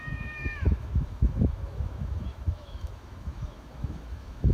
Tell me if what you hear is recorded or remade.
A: remade